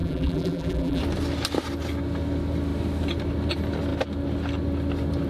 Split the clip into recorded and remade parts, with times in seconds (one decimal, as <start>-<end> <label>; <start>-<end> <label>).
0.0-1.0 remade; 1.0-5.3 recorded